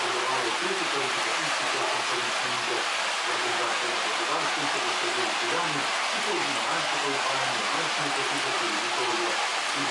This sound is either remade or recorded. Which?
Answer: recorded